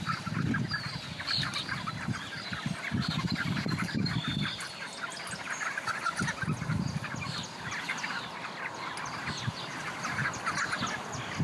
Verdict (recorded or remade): recorded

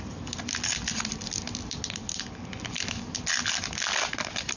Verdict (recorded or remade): recorded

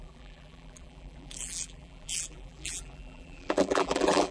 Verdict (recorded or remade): remade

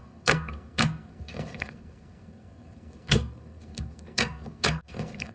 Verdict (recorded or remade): remade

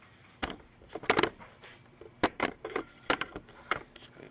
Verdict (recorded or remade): remade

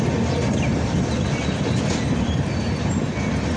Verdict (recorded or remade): recorded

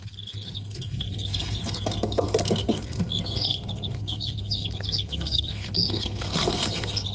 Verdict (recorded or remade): remade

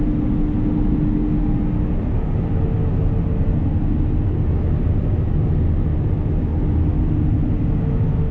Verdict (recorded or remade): recorded